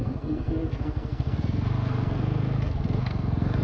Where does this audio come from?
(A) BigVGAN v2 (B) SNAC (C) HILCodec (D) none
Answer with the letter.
B